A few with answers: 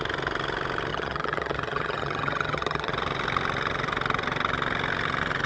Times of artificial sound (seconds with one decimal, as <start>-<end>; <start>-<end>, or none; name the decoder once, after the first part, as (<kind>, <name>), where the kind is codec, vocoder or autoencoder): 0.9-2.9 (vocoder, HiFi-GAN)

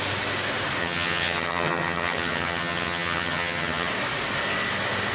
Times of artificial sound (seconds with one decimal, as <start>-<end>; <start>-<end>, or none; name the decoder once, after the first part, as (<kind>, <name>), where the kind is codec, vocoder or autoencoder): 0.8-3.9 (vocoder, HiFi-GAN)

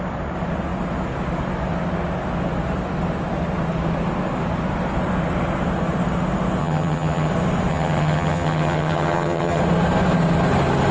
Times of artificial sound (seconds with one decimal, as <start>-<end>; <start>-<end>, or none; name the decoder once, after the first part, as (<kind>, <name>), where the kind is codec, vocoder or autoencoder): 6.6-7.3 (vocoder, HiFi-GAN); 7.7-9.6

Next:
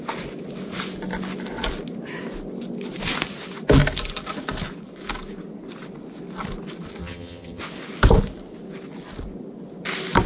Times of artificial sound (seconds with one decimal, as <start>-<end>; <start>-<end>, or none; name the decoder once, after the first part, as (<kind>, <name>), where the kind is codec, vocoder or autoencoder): 7.0-7.6 (vocoder, HiFi-GAN)

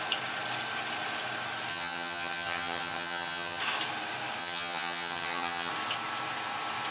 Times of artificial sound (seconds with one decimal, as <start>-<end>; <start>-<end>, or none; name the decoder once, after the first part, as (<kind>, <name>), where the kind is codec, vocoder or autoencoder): 1.7-3.6 (vocoder, HiFi-GAN); 4.4-5.7

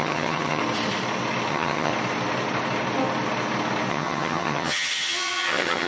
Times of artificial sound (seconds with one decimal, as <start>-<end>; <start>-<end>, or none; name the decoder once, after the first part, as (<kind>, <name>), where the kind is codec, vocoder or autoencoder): 0.0-0.6 (vocoder, HiFi-GAN); 1.5-1.9; 3.9-5.9

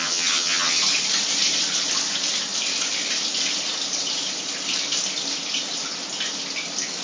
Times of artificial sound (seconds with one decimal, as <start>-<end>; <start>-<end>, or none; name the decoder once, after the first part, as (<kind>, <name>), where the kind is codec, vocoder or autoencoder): 0.0-0.8 (vocoder, HiFi-GAN)

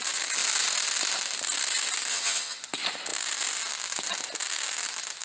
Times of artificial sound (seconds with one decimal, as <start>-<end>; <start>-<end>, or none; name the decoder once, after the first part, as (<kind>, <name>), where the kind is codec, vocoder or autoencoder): 2.1-2.6 (vocoder, HiFi-GAN)